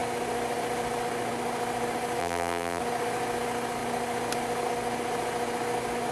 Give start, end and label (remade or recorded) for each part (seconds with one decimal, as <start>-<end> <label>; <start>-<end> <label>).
0.0-2.2 recorded; 2.2-2.8 remade; 2.8-6.1 recorded